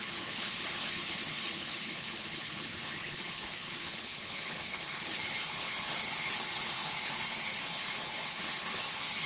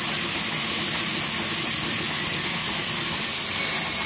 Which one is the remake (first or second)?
first